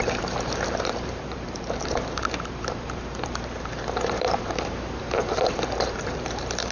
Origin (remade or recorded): remade